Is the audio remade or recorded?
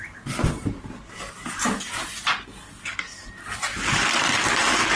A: recorded